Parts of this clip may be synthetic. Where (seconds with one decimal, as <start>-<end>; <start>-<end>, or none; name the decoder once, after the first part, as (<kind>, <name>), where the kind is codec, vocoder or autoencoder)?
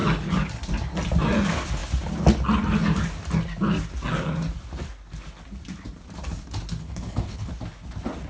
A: 6.8-7.5 (codec, HILCodec)